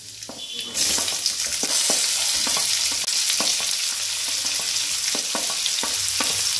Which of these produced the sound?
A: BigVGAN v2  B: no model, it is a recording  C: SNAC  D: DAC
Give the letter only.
B